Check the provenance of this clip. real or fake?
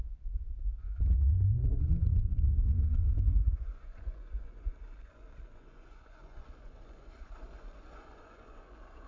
fake